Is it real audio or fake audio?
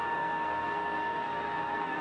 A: fake